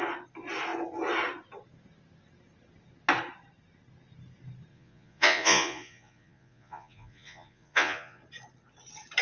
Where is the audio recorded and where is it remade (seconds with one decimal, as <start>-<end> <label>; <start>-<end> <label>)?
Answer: 0.0-4.7 recorded; 4.7-8.2 remade; 8.2-9.2 recorded